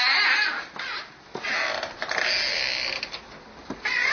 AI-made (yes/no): no